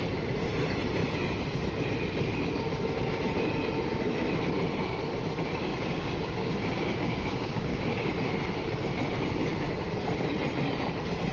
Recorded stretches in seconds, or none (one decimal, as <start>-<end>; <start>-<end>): 0.0-5.7; 8.1-11.3